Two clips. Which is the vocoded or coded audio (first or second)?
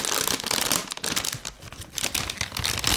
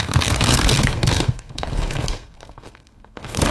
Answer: second